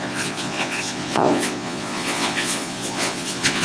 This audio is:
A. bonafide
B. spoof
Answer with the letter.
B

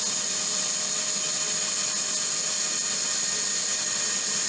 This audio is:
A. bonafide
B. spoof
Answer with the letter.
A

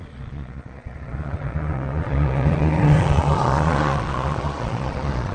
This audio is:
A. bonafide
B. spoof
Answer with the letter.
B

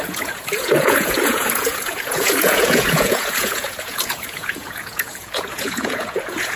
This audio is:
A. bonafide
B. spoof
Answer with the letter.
B